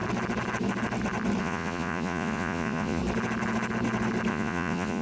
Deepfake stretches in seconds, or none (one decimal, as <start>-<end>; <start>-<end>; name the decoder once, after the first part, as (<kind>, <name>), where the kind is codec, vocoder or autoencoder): 1.4-3.0 (vocoder, Vocos); 4.3-5.0